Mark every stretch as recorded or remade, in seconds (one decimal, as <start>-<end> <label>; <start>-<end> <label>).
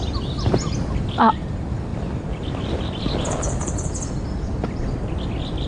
0.0-1.9 recorded; 1.9-5.3 remade; 5.3-5.7 recorded